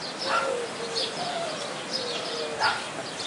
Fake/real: real